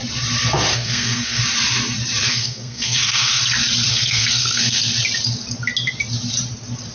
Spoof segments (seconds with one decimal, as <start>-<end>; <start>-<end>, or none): 0.7-1.4; 2.2-3.4; 3.9-4.8